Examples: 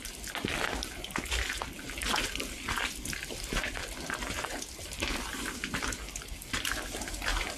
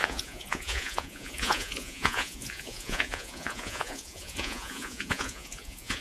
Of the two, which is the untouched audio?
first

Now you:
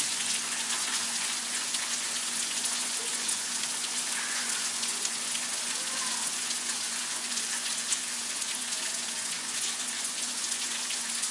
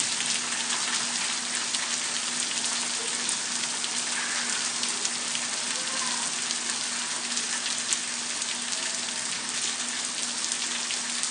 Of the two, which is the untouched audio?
second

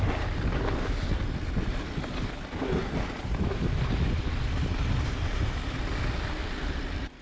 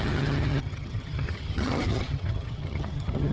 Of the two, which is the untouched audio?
first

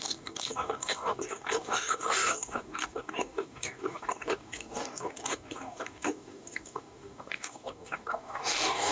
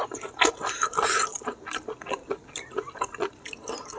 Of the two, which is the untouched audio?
second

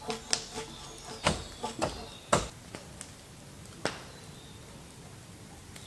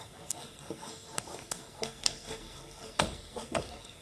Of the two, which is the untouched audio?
first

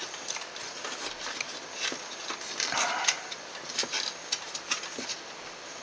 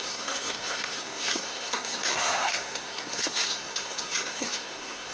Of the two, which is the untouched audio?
first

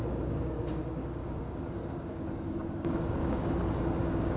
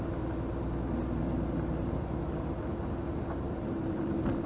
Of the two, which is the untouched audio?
second